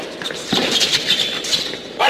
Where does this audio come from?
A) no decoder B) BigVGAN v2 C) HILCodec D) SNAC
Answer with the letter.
B